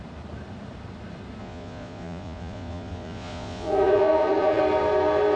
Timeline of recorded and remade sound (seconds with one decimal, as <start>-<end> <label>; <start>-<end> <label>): 0.0-1.4 recorded; 1.4-4.6 remade; 4.6-5.4 recorded